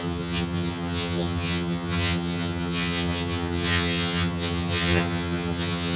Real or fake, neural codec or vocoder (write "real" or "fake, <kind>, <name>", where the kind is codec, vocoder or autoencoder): fake, vocoder, HiFi-GAN